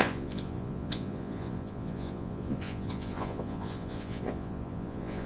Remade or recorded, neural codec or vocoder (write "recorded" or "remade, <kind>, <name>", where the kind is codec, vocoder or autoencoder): remade, vocoder, Vocos